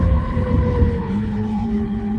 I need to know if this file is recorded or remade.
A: remade